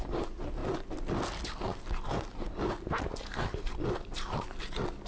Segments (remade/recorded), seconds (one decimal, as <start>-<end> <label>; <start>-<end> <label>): 0.0-5.1 recorded